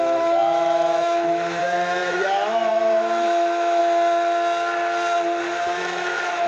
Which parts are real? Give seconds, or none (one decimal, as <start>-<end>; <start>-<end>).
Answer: 3.8-5.8

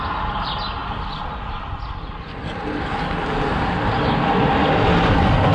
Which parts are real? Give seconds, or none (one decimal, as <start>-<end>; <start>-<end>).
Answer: 0.0-5.5